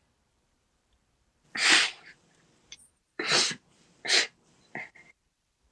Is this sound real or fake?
fake